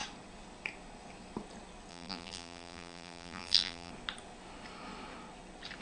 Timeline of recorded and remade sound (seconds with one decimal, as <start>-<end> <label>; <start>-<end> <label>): 0.0-1.9 recorded; 1.9-3.9 remade; 3.9-5.8 recorded